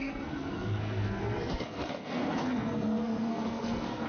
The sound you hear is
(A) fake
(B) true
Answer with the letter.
A